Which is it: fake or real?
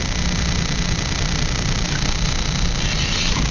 real